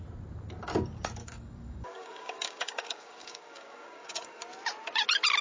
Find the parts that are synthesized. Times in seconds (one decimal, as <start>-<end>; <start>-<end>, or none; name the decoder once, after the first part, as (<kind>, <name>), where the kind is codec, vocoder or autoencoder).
1.2-4.4 (codec, DAC)